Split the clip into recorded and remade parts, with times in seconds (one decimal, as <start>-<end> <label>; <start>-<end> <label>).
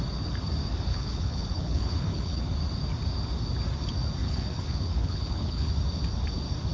0.0-0.9 recorded; 0.9-2.4 remade; 2.4-4.2 recorded; 4.2-5.7 remade; 5.7-6.7 recorded